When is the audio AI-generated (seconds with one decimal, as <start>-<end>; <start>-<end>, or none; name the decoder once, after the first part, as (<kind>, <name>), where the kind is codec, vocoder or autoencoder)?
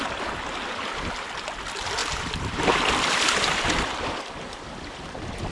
2.0-5.5 (vocoder, BigVGAN v2)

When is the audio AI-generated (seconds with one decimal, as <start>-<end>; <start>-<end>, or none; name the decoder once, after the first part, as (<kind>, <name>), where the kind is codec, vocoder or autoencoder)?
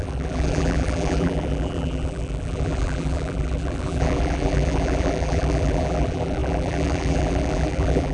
0.0-8.1 (vocoder, BigVGAN v2)